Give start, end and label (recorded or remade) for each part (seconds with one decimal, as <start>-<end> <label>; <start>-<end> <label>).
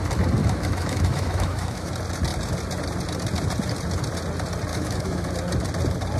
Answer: 0.0-0.4 recorded; 0.4-1.9 remade; 1.9-4.7 recorded; 4.7-5.3 remade; 5.3-6.2 recorded